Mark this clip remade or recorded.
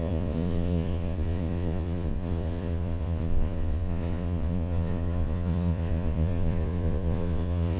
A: remade